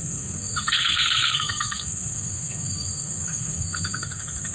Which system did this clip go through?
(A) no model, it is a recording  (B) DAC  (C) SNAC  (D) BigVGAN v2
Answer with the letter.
C